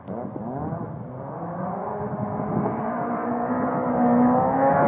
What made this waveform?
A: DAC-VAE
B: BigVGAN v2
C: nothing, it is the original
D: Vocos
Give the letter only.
C